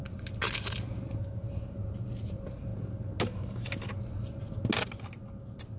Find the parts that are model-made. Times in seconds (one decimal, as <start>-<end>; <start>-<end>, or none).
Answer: 1.5-2.7